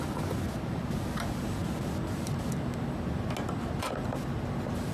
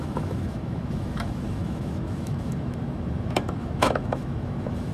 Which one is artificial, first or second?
second